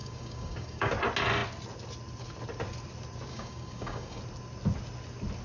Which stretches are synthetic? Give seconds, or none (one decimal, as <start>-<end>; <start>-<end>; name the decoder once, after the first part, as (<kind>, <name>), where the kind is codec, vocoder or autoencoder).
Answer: 0.0-0.9 (codec, DAC); 3.3-4.2